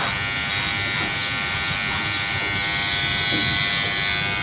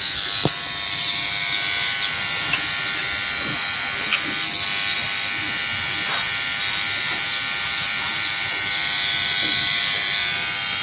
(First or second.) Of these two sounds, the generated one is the second